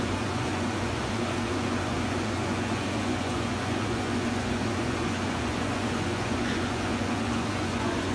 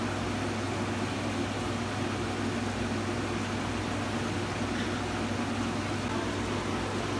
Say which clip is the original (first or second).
second